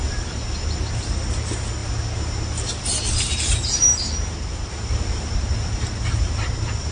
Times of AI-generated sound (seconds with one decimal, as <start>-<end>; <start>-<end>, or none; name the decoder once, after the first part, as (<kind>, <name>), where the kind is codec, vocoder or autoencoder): none